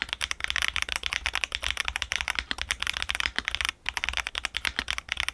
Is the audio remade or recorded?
recorded